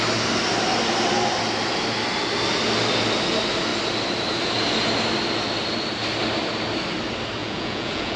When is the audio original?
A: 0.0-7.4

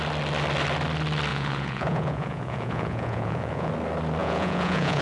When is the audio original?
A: 0.0-1.3; 3.7-4.2

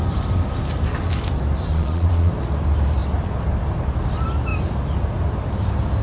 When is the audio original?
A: 0.0-1.7; 2.3-6.0

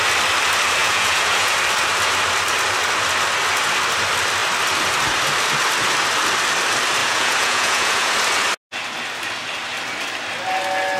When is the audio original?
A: 0.0-0.8; 1.5-7.0; 8.1-11.0

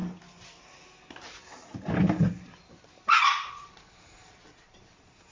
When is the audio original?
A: 0.0-3.2

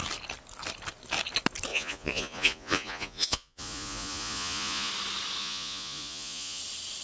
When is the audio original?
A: 0.0-1.7; 4.9-5.4; 6.6-7.0